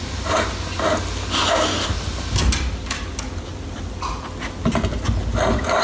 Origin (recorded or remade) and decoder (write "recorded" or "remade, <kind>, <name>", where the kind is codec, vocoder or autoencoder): recorded